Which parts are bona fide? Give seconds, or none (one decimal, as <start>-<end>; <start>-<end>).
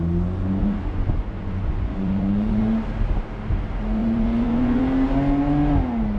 0.0-0.6; 2.6-4.0; 4.8-6.2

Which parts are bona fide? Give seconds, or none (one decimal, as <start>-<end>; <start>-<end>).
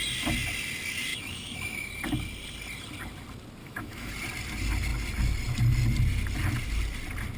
0.0-1.1; 1.9-3.6; 4.1-7.4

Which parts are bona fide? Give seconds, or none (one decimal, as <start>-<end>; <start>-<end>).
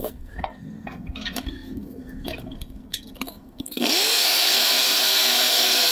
none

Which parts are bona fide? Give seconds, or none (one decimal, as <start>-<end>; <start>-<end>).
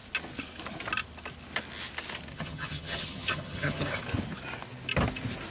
0.0-2.3; 4.0-5.5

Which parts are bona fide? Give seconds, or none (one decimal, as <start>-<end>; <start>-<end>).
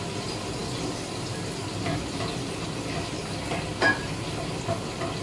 0.0-5.2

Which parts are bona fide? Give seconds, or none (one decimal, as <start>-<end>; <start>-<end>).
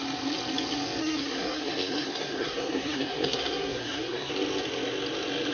0.0-1.0; 4.3-5.5